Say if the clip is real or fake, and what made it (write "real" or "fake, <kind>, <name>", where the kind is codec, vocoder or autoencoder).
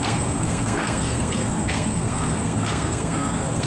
fake, codec, SNAC